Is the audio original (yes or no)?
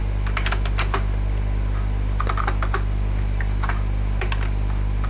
yes